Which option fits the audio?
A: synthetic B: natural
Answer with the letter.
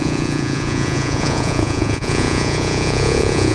A